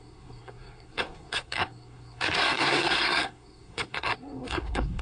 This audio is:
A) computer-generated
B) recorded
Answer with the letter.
A